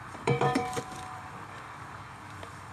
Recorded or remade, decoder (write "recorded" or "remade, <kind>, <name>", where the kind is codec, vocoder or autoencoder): remade, codec, DAC